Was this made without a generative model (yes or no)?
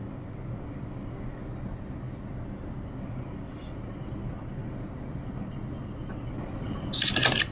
yes